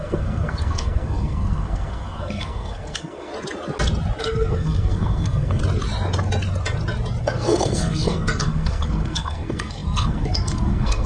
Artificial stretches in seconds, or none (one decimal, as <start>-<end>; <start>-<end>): 0.0-3.3; 4.2-5.6; 7.2-11.1

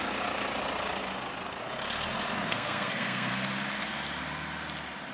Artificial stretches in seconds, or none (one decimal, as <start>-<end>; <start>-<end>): 2.4-3.3

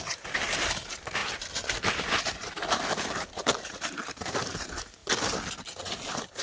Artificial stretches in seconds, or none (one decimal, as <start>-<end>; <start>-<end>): 0.0-1.2; 1.8-5.0; 5.8-6.4

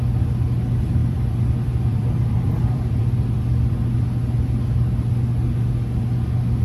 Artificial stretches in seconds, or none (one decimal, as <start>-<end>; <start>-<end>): 1.0-3.0

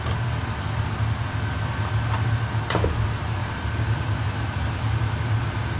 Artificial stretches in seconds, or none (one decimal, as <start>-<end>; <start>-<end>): none